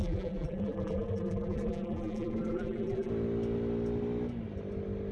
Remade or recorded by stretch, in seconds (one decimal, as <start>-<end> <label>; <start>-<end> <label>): 0.0-3.1 remade; 3.1-5.1 recorded